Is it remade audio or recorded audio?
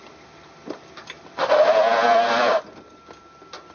recorded